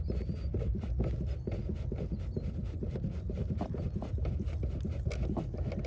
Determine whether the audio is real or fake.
real